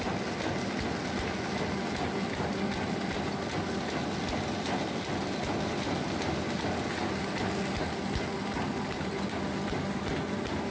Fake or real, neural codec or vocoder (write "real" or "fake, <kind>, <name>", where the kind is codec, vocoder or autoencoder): real